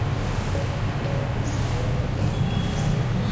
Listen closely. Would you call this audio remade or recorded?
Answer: recorded